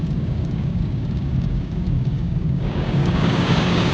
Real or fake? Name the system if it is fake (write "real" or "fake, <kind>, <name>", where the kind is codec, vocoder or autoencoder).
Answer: fake, codec, DAC